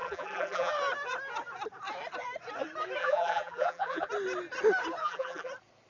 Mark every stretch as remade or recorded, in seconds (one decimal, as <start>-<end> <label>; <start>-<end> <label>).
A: 0.0-0.7 remade; 0.7-3.0 recorded; 3.0-4.1 remade; 4.1-5.0 recorded; 5.0-5.5 remade; 5.5-5.9 recorded

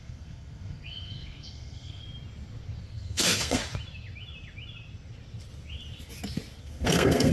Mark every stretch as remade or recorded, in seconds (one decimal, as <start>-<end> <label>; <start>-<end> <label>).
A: 0.0-2.0 remade; 2.0-2.8 recorded; 2.8-3.6 remade; 3.6-6.6 recorded; 6.6-7.3 remade

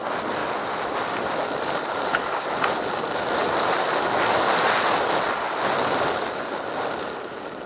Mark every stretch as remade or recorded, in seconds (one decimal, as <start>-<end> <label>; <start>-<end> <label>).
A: 0.0-0.4 recorded; 0.4-4.0 remade; 4.0-7.7 recorded

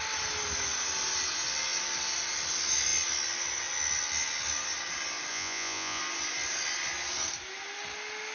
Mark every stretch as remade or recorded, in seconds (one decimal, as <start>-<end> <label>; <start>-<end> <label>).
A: 0.0-5.3 recorded; 5.3-6.0 remade; 6.0-8.3 recorded

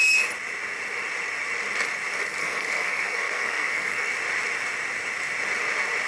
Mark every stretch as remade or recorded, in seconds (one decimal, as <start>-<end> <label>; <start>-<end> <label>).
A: 0.0-2.4 recorded; 2.4-4.1 remade; 4.1-6.1 recorded

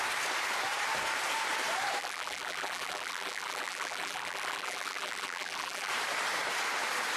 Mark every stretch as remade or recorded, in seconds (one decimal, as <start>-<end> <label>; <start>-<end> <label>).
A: 0.0-2.0 recorded; 2.0-5.9 remade; 5.9-7.2 recorded